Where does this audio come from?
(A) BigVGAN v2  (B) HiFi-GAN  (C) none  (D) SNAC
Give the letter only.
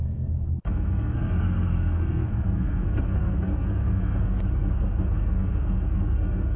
D